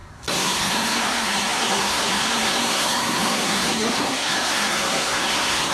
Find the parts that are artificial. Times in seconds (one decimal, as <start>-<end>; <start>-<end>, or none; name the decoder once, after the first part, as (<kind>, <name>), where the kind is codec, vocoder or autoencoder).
0.0-5.7 (codec, SNAC)